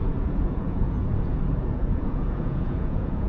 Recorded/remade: remade